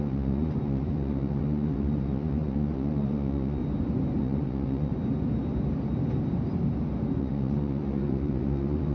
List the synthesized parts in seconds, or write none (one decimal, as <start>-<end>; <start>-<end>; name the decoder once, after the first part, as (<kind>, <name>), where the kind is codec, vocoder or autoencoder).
0.0-3.6 (vocoder, Vocos); 4.2-4.9; 7.2-8.9